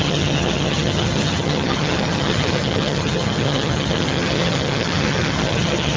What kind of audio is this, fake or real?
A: fake